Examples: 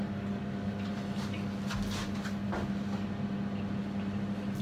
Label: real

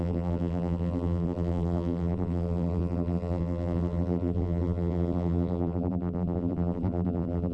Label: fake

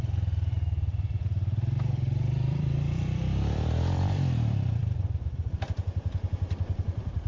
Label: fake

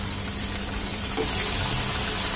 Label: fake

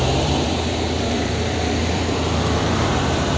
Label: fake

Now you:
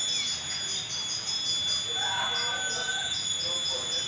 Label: real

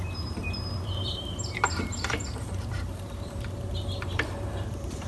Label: fake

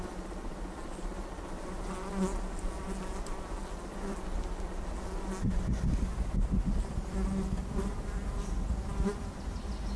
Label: real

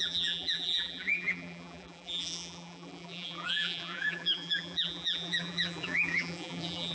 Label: fake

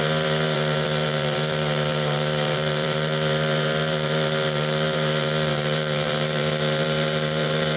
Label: fake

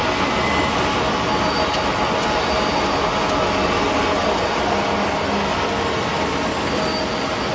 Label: real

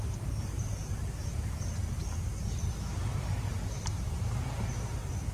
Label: fake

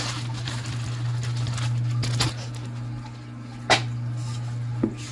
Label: real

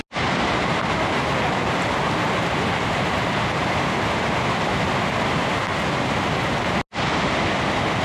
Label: real